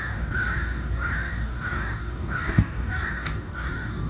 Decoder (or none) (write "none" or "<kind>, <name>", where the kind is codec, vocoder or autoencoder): codec, DAC